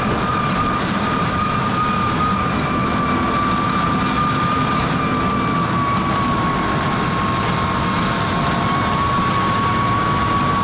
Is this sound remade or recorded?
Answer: recorded